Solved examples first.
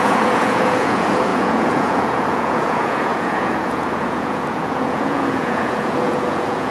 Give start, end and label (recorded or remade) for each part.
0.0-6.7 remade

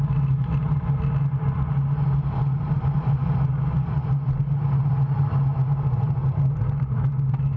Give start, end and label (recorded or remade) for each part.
0.0-7.6 recorded

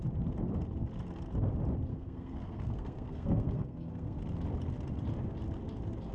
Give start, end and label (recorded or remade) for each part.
0.0-1.9 recorded; 1.9-4.2 remade; 4.2-6.1 recorded

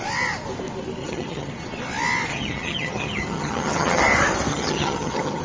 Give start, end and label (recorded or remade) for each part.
0.0-1.0 recorded; 1.0-1.5 remade; 1.5-2.3 recorded; 2.3-4.0 remade; 4.0-4.5 recorded; 4.5-5.4 remade

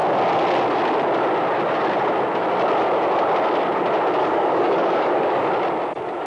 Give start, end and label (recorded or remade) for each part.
0.0-4.2 recorded; 4.2-5.5 remade; 5.5-6.3 recorded

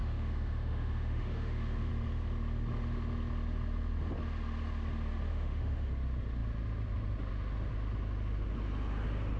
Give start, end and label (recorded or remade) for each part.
0.0-1.9 remade; 1.9-5.3 recorded; 5.3-5.9 remade; 5.9-9.4 recorded

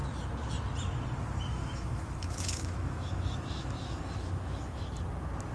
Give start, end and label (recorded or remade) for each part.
0.0-1.5 recorded; 1.5-4.8 remade; 4.8-5.5 recorded

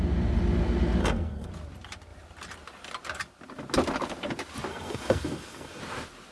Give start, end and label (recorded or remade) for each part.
0.0-1.0 recorded; 1.0-1.5 remade; 1.5-4.7 recorded; 4.7-5.8 remade; 5.8-6.3 recorded